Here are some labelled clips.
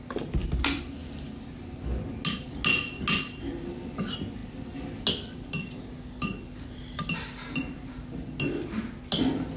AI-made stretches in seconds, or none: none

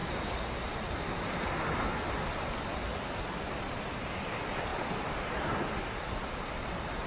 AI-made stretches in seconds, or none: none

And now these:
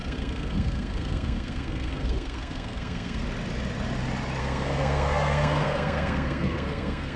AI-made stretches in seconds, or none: 0.0-3.2 (codec, SNAC); 4.4-7.2